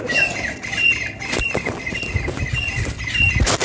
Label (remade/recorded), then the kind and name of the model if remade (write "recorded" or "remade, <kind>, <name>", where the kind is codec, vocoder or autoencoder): recorded